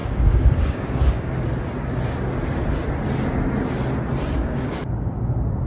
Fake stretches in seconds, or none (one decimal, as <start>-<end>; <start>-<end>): 0.0-1.3; 4.4-5.1